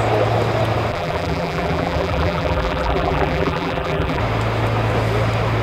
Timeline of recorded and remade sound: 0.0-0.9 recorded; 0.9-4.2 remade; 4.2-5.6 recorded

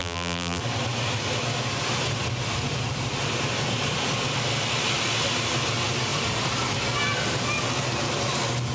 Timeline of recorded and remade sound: 0.0-0.6 remade; 0.6-8.7 recorded

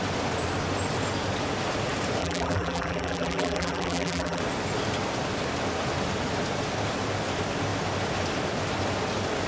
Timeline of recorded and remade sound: 0.0-2.2 recorded; 2.2-4.4 remade; 4.4-9.5 recorded

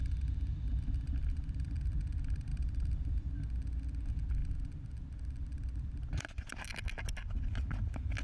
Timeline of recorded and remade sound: 0.0-0.7 recorded; 0.7-1.8 remade; 1.8-2.5 recorded; 2.5-3.3 remade; 3.3-8.2 recorded

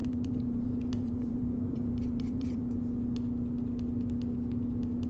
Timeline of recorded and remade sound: 0.0-2.6 remade; 2.6-5.1 recorded

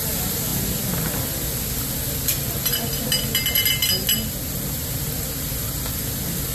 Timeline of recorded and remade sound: 0.0-0.5 remade; 0.5-4.4 recorded; 4.4-6.5 remade

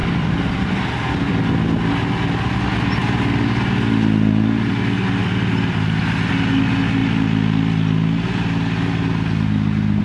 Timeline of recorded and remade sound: 0.0-1.3 remade; 1.3-5.2 recorded; 5.2-6.3 remade; 6.3-10.0 recorded

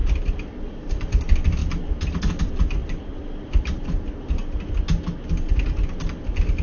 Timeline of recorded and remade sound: 0.0-1.0 remade; 1.0-1.6 recorded; 1.6-2.2 remade; 2.2-2.8 recorded; 2.8-4.7 remade; 4.7-6.6 recorded